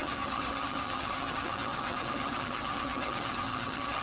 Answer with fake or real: fake